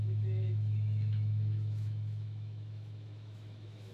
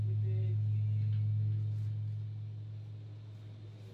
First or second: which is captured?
second